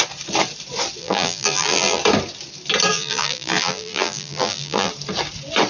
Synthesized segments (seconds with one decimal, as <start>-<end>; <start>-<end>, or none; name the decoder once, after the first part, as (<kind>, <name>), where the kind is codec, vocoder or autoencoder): 1.0-2.0 (vocoder, BigVGAN v2); 2.9-4.9